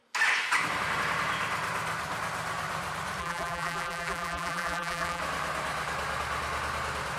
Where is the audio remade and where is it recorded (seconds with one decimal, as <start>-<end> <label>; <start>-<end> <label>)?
0.0-3.2 recorded; 3.2-5.2 remade; 5.2-7.2 recorded